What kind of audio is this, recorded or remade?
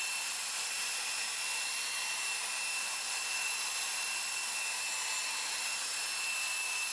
recorded